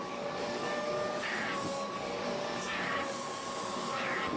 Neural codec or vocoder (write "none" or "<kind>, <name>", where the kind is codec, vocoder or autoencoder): codec, DAC